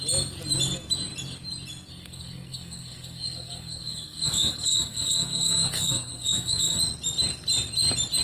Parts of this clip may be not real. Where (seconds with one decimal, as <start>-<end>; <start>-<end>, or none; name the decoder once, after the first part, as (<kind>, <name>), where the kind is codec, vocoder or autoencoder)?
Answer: 1.9-6.8 (codec, SNAC)